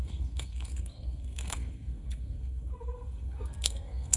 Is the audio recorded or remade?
remade